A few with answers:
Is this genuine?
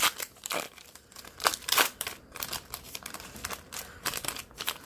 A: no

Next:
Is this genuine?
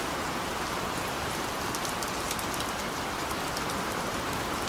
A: yes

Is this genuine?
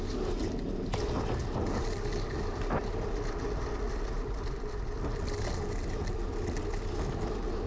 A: yes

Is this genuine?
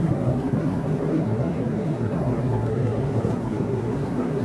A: no